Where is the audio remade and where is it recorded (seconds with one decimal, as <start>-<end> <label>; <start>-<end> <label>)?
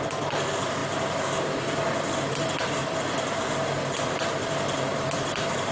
0.0-0.8 remade; 0.8-2.3 recorded; 2.3-2.8 remade; 2.8-4.0 recorded; 4.0-5.7 remade